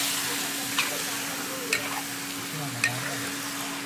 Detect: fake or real real